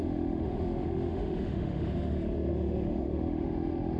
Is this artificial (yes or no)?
yes